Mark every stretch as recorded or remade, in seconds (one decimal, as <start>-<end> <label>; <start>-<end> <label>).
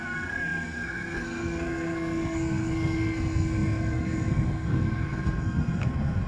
0.0-6.3 remade